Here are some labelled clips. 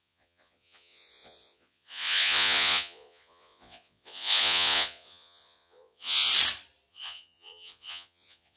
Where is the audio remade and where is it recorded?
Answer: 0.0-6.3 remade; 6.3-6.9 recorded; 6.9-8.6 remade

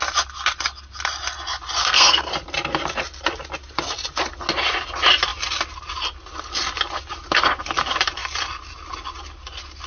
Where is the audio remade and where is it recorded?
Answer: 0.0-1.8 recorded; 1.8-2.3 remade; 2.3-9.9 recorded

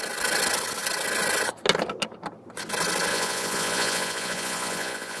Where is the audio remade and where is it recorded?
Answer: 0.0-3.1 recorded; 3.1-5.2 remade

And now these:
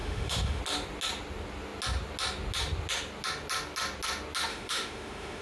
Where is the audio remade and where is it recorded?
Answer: 0.0-0.6 remade; 0.6-4.5 recorded; 4.5-5.4 remade

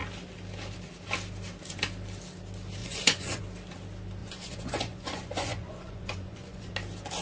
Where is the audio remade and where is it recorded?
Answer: 0.0-2.8 recorded; 2.8-3.4 remade; 3.4-4.2 recorded; 4.2-6.7 remade; 6.7-7.2 recorded

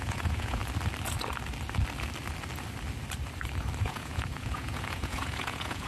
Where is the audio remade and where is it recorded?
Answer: 0.0-0.6 remade; 0.6-3.8 recorded; 3.8-5.9 remade

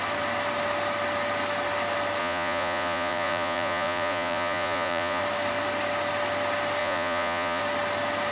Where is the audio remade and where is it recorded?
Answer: 0.0-2.2 recorded; 2.2-5.2 remade; 5.2-6.8 recorded; 6.8-7.6 remade; 7.6-8.3 recorded